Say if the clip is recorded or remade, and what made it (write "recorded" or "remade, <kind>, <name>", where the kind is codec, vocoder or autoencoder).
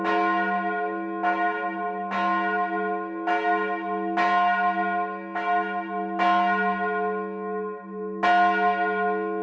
recorded